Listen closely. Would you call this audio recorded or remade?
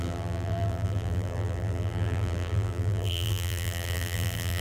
remade